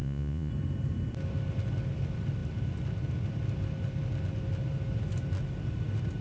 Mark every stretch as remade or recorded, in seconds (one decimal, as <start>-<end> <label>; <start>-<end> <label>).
0.0-0.5 remade; 0.5-6.2 recorded